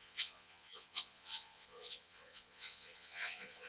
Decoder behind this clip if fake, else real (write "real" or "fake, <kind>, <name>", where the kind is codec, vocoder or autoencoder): fake, vocoder, Vocos